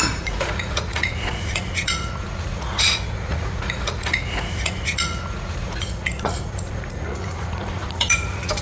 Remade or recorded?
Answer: remade